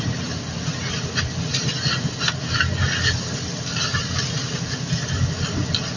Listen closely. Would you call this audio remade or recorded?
recorded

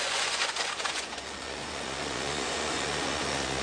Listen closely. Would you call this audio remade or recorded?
remade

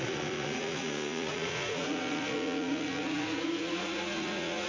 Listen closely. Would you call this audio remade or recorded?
remade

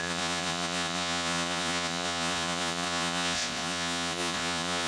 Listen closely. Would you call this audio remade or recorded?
remade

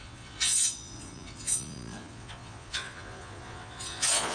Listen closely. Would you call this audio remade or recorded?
remade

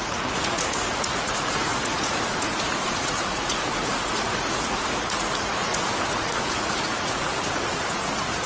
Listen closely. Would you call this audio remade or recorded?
remade